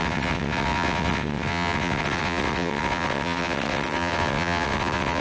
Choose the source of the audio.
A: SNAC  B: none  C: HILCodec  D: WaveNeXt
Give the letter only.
D